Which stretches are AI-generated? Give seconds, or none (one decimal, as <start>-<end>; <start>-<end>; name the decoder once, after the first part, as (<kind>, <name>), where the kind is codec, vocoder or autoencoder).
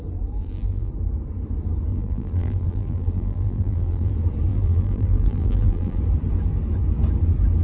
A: 0.4-0.9 (vocoder, BigVGAN v2); 1.9-4.1; 4.5-6.0